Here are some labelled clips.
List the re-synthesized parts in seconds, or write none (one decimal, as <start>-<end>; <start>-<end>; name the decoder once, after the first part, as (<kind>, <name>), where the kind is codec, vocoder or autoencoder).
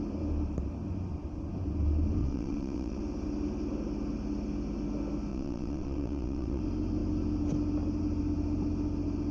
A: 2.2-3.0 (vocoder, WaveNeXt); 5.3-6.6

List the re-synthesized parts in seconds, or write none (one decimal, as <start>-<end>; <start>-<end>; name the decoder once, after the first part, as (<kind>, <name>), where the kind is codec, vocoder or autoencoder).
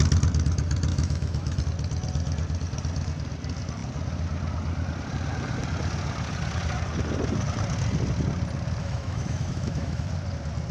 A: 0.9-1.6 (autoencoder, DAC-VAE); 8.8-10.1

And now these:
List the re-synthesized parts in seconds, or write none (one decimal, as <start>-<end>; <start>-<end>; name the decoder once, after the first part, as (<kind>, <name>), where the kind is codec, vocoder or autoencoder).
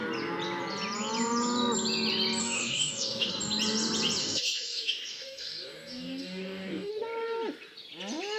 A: 2.4-3.3 (codec, DAC); 4.2-6.9